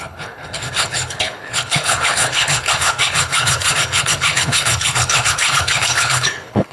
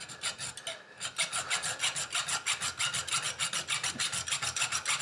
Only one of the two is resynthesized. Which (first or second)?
first